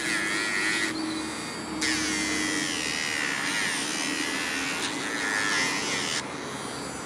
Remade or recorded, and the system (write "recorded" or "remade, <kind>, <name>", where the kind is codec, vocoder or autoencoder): recorded